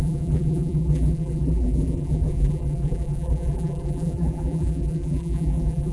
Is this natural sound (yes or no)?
no